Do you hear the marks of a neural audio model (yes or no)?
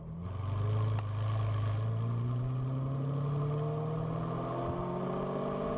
no